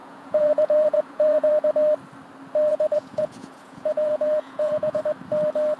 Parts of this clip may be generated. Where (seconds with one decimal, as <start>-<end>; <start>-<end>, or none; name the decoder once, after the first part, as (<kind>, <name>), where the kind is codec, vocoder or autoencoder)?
0.0-1.5 (vocoder, Vocos); 2.7-5.0